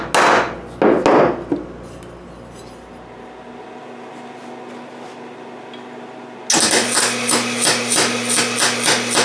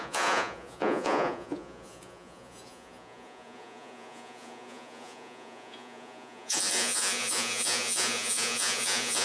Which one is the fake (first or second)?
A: second